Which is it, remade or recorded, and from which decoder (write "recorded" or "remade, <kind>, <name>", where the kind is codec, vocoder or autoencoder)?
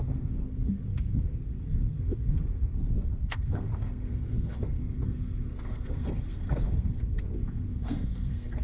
remade, codec, SNAC